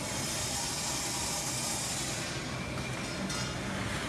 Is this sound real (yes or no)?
yes